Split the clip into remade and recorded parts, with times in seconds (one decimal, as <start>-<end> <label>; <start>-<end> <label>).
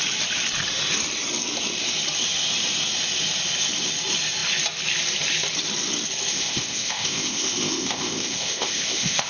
0.0-6.3 recorded; 6.3-9.3 remade